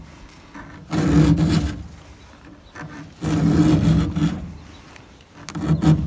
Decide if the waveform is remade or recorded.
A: recorded